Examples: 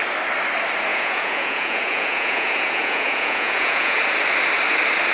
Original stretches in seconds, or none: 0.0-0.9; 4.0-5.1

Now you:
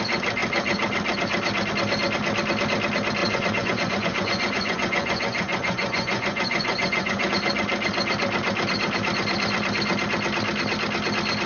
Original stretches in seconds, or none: 0.0-3.2; 7.3-11.5

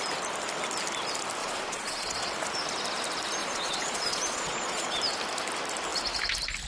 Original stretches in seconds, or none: 0.0-1.4; 2.3-3.4; 5.0-6.7

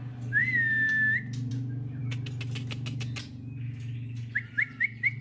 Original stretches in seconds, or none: 0.0-5.2

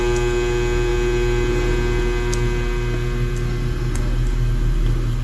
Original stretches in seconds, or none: 0.0-5.2

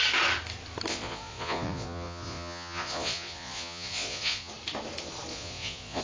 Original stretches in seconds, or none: 0.0-0.9; 4.5-5.3

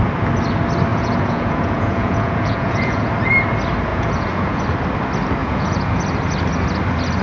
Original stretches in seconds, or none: 0.0-0.9; 3.1-3.9; 4.6-5.4; 6.0-7.2